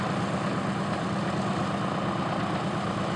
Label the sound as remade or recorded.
recorded